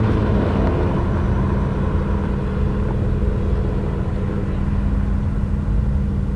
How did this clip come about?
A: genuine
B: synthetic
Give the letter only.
A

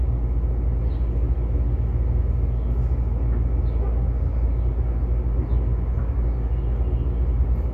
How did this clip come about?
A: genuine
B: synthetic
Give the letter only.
A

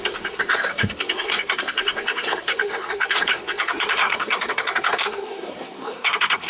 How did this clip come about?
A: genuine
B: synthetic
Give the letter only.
B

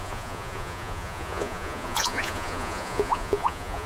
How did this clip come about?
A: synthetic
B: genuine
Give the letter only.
A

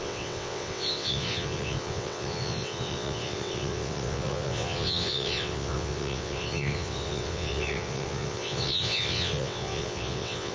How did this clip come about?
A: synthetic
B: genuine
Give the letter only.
A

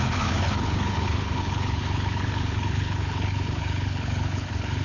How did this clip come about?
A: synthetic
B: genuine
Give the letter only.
A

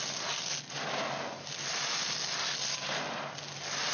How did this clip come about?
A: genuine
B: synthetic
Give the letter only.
A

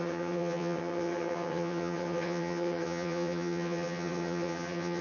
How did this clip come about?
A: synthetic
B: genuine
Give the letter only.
A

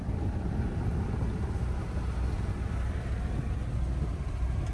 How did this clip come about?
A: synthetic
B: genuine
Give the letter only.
B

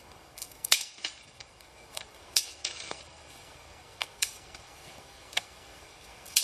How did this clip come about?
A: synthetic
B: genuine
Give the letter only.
A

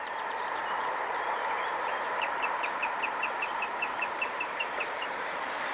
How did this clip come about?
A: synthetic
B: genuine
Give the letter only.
A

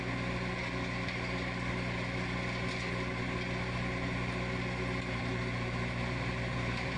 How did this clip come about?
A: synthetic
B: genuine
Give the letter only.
B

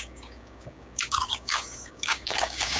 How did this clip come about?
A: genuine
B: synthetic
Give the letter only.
B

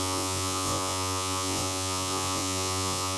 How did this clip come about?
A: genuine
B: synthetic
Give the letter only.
B